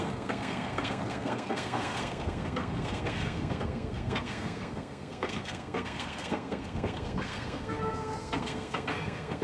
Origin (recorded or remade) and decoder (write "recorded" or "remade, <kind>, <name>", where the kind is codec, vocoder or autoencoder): remade, codec, SNAC